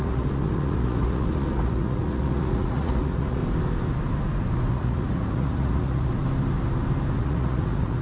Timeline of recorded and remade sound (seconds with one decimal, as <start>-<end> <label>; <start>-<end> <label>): 0.0-3.4 remade; 3.4-4.7 recorded; 4.7-6.1 remade; 6.1-7.2 recorded; 7.2-8.0 remade